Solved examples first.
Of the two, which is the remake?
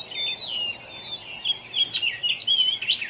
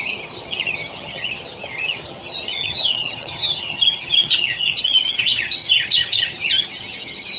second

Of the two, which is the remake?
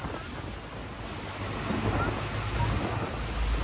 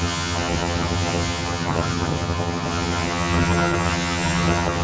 second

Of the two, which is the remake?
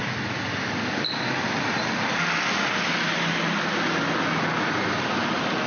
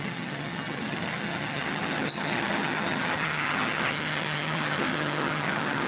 second